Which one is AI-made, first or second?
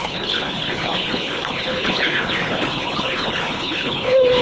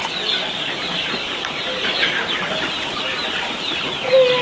first